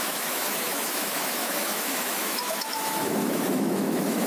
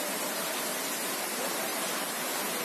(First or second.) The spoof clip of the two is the first